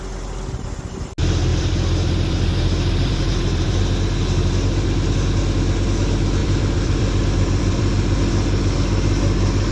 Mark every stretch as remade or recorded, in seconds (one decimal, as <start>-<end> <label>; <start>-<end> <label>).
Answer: 0.0-1.5 recorded; 1.5-3.8 remade; 3.8-6.4 recorded; 6.4-8.2 remade; 8.2-9.7 recorded